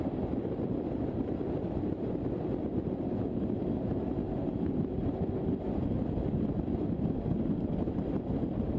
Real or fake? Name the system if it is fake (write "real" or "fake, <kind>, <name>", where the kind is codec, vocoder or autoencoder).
real